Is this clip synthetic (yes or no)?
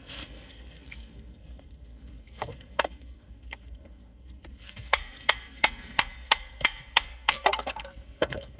yes